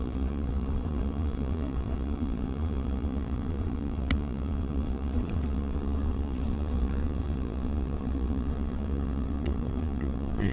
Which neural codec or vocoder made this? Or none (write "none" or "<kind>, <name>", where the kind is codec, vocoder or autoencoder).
vocoder, WaveNeXt